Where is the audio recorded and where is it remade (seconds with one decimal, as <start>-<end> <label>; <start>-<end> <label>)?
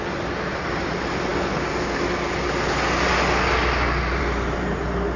0.0-5.2 recorded